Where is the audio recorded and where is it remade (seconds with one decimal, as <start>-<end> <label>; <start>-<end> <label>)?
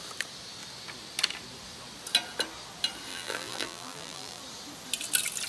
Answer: 0.0-3.1 recorded; 3.1-4.4 remade; 4.4-5.5 recorded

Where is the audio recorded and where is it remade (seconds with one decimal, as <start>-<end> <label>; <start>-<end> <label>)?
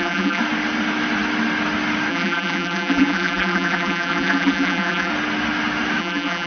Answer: 0.0-0.4 remade; 0.4-2.1 recorded; 2.1-5.1 remade; 5.1-6.0 recorded; 6.0-6.5 remade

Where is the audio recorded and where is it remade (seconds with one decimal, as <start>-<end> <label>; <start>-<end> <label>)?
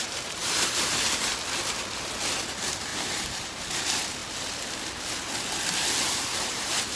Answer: 0.0-1.3 remade; 1.3-2.5 recorded; 2.5-4.2 remade; 4.2-6.1 recorded; 6.1-7.0 remade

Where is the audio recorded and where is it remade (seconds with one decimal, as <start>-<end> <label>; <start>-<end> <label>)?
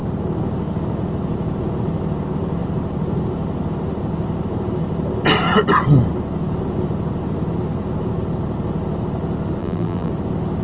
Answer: 0.0-9.6 recorded; 9.6-10.1 remade; 10.1-10.6 recorded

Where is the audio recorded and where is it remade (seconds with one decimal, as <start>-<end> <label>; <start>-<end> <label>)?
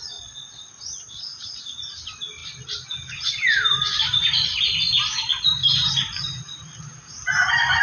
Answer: 0.0-1.3 recorded; 1.3-1.9 remade; 1.9-2.4 recorded; 2.4-4.6 remade; 4.6-5.6 recorded; 5.6-7.8 remade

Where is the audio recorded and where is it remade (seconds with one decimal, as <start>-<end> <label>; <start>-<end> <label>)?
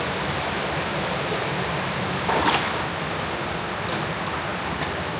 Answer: 0.0-0.9 recorded; 0.9-2.4 remade; 2.4-5.2 recorded